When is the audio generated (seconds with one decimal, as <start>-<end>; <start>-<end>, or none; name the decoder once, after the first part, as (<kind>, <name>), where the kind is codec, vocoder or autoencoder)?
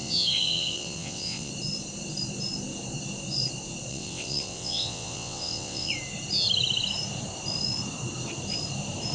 0.0-1.5 (vocoder, WaveNeXt); 3.9-5.9